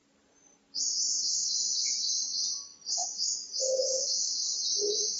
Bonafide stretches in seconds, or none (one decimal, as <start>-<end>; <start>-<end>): 0.0-5.2